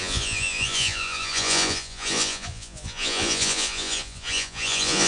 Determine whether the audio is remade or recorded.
remade